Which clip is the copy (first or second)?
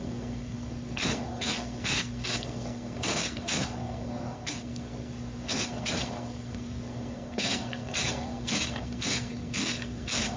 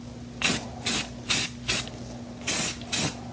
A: first